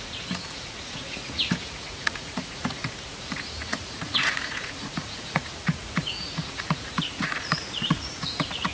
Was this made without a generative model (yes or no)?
no